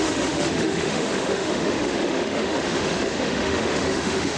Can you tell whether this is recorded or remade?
remade